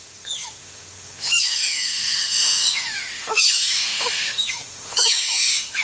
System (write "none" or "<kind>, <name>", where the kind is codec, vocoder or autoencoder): autoencoder, DAC-VAE